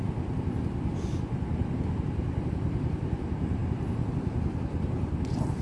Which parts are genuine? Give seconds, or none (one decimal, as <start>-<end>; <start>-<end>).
0.0-5.6